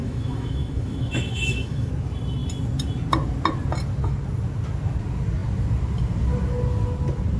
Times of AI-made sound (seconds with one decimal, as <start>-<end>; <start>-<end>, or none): 0.0-1.9